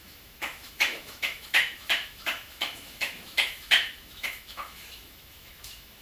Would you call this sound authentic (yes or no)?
no